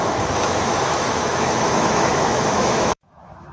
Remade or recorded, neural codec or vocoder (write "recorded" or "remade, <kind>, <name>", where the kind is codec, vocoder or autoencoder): remade, autoencoder, DAC-VAE